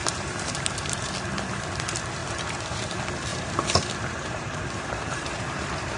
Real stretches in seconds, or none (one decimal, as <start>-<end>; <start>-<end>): 1.1-2.2; 2.9-3.3